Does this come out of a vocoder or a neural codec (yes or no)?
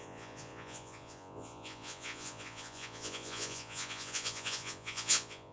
yes